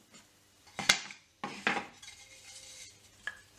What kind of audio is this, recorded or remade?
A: recorded